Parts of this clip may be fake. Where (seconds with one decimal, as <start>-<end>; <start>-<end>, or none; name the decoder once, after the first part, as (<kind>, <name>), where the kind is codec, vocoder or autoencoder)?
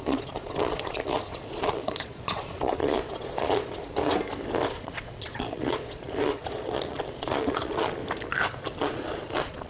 0.0-3.8 (vocoder, Vocos); 4.7-8.0; 8.8-9.7